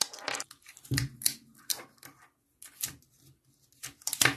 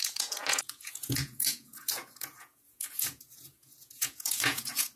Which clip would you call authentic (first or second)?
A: first